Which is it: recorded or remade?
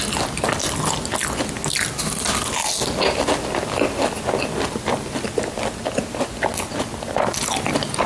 recorded